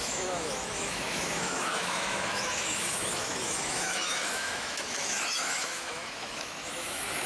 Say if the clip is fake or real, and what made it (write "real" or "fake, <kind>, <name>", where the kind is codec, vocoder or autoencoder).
fake, autoencoder, DAC-VAE